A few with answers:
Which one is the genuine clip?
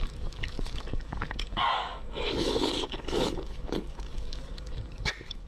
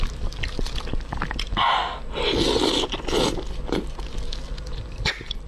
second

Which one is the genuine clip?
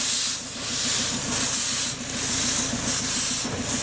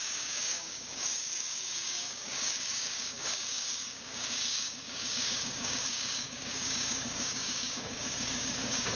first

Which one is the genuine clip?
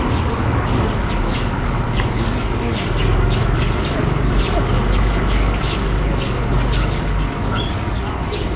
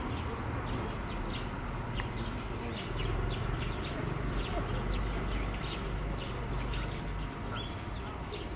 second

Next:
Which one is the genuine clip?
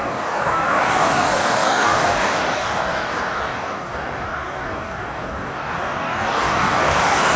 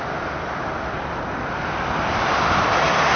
second